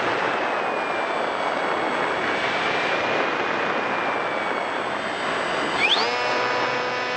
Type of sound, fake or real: real